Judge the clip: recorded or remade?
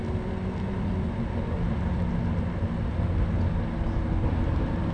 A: recorded